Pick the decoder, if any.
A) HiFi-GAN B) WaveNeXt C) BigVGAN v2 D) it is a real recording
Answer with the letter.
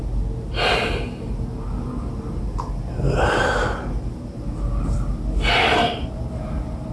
D